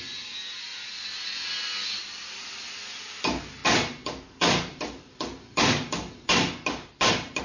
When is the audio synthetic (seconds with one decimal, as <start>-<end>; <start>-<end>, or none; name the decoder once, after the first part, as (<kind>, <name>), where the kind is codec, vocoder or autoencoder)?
none